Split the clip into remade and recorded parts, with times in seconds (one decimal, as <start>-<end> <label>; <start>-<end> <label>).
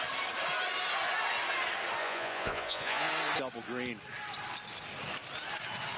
0.0-2.0 recorded; 2.0-3.1 remade; 3.1-6.0 recorded